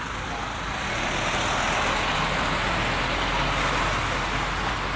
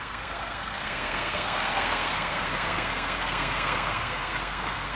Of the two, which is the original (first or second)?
first